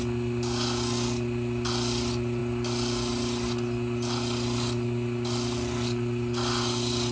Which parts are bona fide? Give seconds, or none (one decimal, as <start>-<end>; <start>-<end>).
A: 0.0-7.1